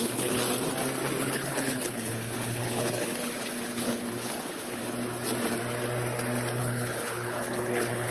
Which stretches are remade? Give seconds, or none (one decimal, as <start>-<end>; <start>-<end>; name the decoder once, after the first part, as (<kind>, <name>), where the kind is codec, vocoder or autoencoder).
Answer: 0.0-0.4 (codec, HILCodec); 1.2-4.8; 6.6-8.1